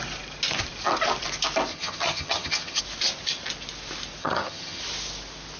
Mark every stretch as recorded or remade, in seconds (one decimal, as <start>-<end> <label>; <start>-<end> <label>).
0.0-1.7 recorded; 1.7-2.8 remade; 2.8-4.2 recorded; 4.2-4.8 remade; 4.8-5.6 recorded